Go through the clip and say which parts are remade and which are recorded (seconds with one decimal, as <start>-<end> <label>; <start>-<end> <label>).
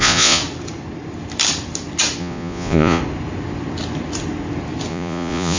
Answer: 0.0-0.4 remade; 0.4-2.2 recorded; 2.2-3.0 remade; 3.0-4.9 recorded; 4.9-5.6 remade